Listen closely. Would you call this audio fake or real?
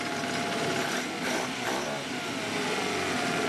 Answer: real